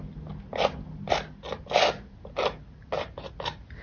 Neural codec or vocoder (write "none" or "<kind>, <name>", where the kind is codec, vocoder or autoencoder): none